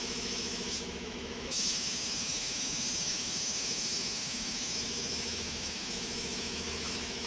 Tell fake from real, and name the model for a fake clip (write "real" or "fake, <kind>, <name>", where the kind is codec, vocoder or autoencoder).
fake, autoencoder, DAC-VAE